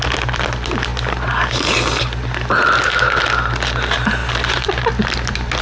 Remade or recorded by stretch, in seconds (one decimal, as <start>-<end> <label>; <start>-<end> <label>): 0.0-4.2 recorded; 4.2-4.9 remade; 4.9-5.6 recorded